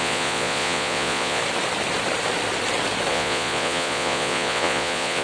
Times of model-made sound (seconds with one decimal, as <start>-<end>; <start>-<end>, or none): 0.0-1.4; 3.1-5.2